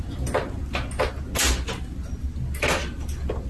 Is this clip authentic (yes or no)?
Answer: yes